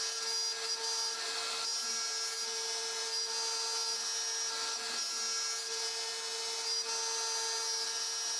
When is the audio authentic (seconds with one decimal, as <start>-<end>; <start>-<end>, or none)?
0.0-8.4